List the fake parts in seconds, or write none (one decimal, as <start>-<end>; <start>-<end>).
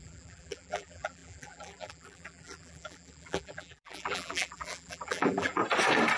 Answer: 0.0-5.6